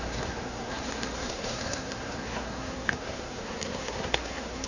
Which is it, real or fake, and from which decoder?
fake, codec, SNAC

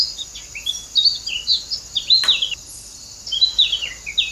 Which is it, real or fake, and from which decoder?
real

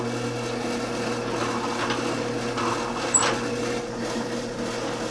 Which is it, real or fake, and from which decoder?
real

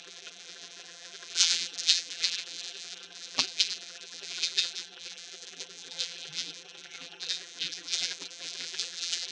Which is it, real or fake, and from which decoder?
fake, vocoder, BigVGAN v2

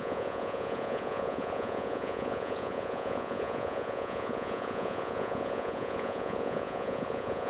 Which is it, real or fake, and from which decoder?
fake, vocoder, Vocos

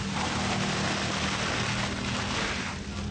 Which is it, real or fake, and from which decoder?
real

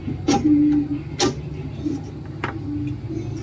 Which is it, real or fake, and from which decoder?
real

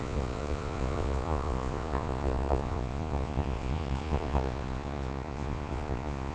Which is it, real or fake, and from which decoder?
fake, vocoder, Vocos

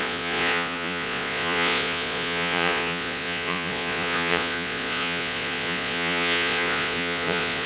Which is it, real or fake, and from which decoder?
fake, vocoder, Vocos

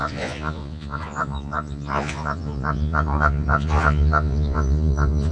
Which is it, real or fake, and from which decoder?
fake, vocoder, Vocos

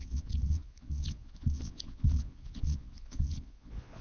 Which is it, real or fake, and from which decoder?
fake, vocoder, Vocos